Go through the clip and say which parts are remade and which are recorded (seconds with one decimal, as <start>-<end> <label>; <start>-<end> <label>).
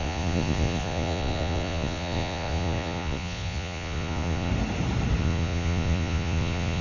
0.0-4.5 remade; 4.5-5.2 recorded; 5.2-6.8 remade